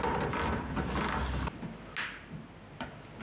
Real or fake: real